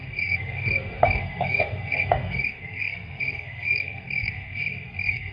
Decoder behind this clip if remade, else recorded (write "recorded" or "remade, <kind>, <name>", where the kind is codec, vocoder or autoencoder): remade, codec, SNAC